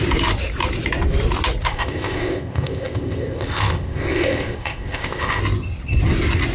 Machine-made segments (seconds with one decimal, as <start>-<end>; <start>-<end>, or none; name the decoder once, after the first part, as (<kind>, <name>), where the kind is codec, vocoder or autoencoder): 1.7-5.4 (codec, ZipCodec)